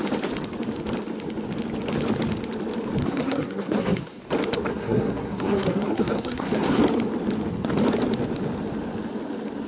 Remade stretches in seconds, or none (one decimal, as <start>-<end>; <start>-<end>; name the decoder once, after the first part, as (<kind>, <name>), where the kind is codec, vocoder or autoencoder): 3.0-4.2 (codec, SNAC); 4.7-6.8